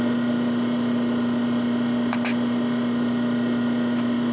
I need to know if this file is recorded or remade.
recorded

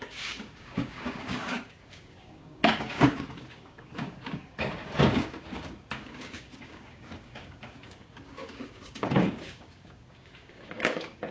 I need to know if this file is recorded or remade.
remade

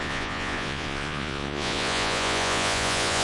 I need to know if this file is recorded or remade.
remade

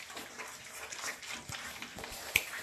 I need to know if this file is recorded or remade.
recorded